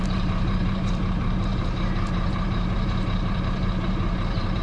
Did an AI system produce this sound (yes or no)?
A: yes